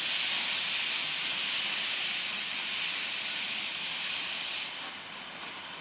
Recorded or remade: recorded